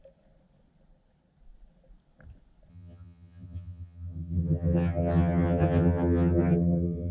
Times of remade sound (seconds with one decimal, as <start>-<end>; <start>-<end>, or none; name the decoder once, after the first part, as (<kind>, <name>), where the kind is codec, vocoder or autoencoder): 2.7-7.1 (vocoder, HiFi-GAN)